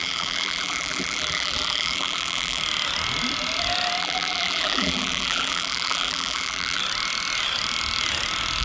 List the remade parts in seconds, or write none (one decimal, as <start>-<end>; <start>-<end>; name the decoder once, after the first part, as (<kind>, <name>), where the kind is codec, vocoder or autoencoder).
0.0-2.6 (vocoder, BigVGAN v2); 4.0-6.8